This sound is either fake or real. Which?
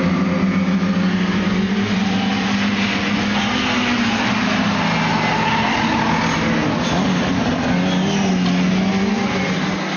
real